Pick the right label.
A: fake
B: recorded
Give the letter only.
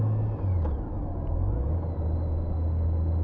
B